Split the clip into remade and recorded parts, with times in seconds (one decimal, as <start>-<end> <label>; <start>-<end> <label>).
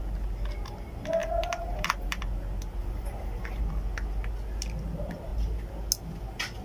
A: 0.0-1.2 recorded; 1.2-2.2 remade; 2.2-2.8 recorded; 2.8-3.6 remade; 3.6-6.6 recorded